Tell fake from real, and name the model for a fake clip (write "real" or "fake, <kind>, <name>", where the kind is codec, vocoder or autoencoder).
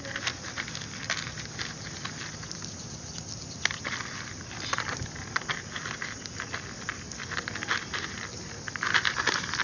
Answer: real